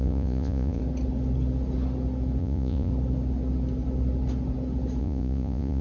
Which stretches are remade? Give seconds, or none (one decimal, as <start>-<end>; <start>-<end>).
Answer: 0.0-0.8; 2.4-2.9; 5.0-5.8